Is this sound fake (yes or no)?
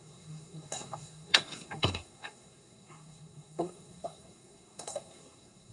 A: yes